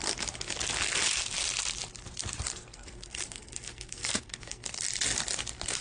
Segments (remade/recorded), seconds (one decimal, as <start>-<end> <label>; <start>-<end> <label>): 0.0-2.5 recorded; 2.5-4.8 remade; 4.8-5.8 recorded